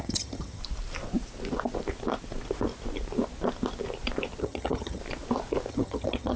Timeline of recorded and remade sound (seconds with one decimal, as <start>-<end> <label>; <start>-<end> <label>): 0.0-0.6 remade; 0.6-4.4 recorded; 4.4-5.0 remade; 5.0-5.7 recorded; 5.7-6.4 remade